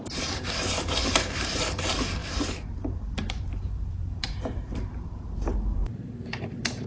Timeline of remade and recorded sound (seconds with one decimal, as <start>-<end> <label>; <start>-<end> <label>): 0.0-6.9 remade